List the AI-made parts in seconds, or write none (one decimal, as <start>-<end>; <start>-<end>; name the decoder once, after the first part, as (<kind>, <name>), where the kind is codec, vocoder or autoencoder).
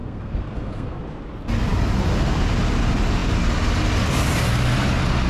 0.0-1.0 (codec, SNAC)